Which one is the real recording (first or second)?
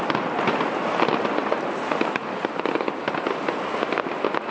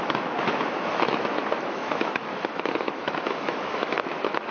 first